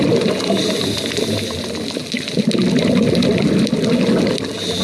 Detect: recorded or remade recorded